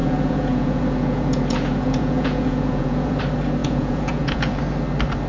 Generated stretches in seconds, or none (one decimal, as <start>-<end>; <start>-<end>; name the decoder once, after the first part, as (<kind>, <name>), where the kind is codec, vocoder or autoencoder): 0.0-3.2 (vocoder, Vocos); 3.6-4.6